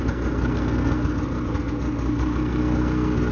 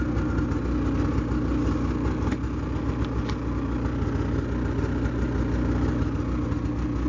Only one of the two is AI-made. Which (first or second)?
first